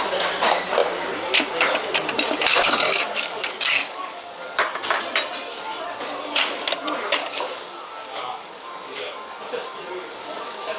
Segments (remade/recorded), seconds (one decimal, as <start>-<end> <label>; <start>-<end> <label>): 0.0-2.5 recorded; 2.5-5.0 remade; 5.0-7.2 recorded; 7.2-10.8 remade